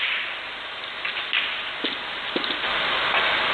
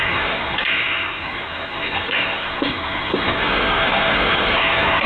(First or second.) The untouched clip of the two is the first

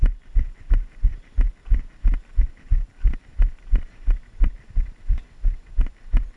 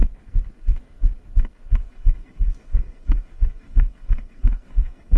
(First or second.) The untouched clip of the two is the first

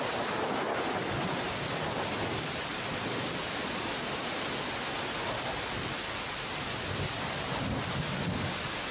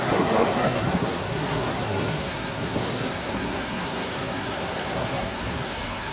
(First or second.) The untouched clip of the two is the first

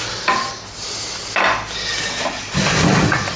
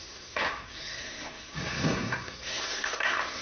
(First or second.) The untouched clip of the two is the first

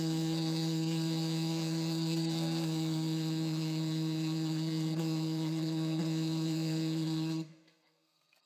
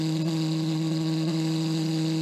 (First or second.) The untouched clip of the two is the second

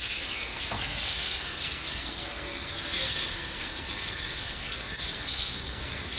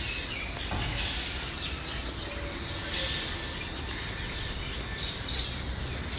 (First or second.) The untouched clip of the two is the second